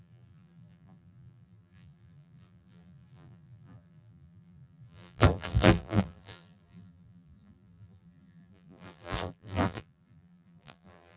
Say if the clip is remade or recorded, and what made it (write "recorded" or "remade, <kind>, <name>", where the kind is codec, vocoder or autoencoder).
remade, vocoder, BigVGAN v2